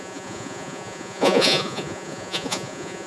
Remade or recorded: remade